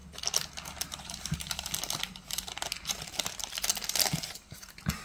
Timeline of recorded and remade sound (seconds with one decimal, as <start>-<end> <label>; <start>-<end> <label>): 0.0-5.0 recorded